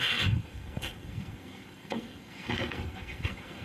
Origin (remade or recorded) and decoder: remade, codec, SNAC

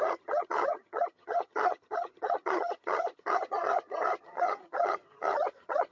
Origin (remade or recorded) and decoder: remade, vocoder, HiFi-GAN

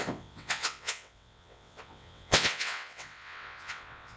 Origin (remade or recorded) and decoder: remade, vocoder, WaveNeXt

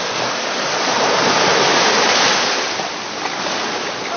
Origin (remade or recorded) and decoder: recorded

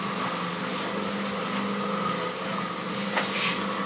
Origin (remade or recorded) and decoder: recorded